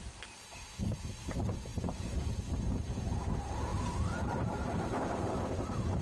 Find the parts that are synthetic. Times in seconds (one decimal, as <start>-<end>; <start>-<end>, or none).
1.7-2.7; 3.7-5.6